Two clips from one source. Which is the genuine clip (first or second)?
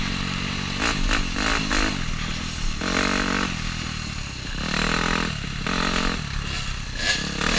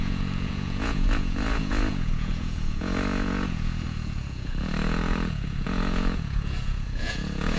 first